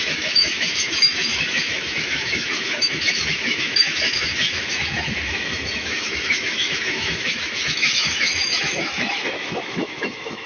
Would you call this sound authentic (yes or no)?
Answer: no